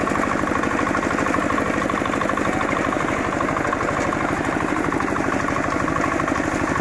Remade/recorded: recorded